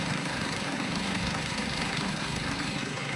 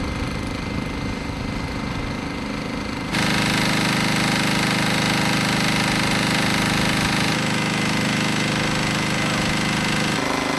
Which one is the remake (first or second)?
first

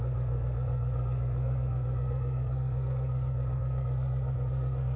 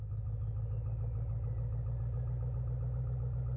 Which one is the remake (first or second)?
first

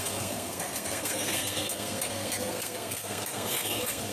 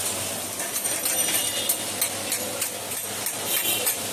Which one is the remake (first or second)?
first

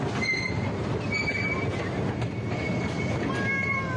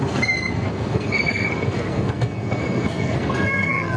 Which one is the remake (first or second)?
second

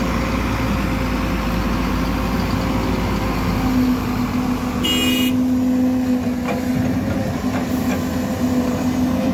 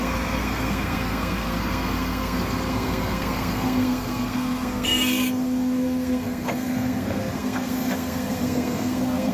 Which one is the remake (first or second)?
second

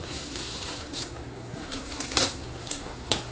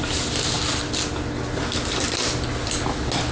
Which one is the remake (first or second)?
first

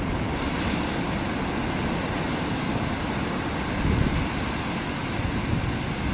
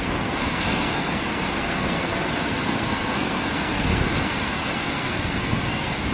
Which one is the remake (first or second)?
second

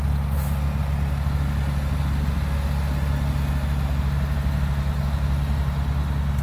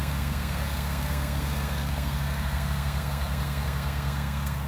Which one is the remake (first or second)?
second